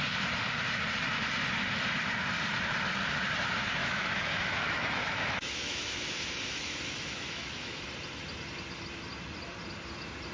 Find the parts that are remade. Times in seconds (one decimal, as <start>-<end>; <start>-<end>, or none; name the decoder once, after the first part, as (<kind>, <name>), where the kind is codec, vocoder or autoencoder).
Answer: 3.8-7.8 (autoencoder, DAC-VAE)